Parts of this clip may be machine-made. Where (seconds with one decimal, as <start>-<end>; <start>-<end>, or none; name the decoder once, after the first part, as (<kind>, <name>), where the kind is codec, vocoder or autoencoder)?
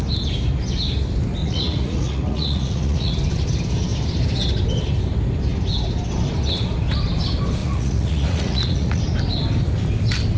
1.4-3.1 (vocoder, Vocos); 7.6-9.0